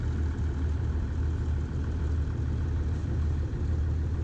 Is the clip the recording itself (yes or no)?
yes